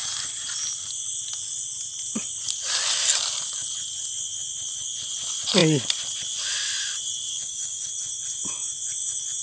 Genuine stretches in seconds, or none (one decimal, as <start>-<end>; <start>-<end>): 0.0-7.3; 7.9-9.4